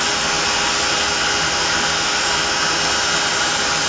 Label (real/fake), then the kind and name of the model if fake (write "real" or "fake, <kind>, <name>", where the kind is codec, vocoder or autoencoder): real